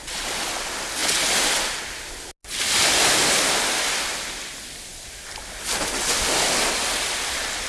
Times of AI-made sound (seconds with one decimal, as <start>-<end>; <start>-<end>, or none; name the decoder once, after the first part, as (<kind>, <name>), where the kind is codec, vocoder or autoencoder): none